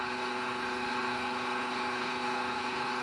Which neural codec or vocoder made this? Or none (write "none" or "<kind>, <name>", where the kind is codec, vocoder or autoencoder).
codec, HILCodec